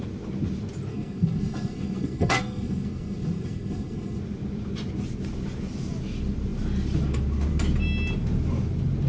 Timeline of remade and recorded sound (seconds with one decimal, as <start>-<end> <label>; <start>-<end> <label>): 0.0-0.9 recorded; 0.9-4.2 remade; 4.2-9.1 recorded